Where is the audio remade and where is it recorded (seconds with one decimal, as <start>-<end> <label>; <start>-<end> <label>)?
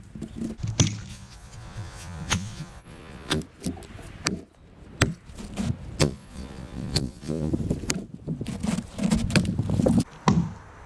0.0-1.1 recorded; 1.1-3.4 remade; 3.4-6.0 recorded; 6.0-7.5 remade; 7.5-10.9 recorded